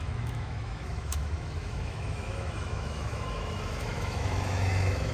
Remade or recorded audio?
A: remade